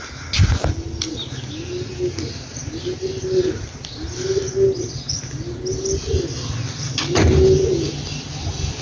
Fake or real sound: real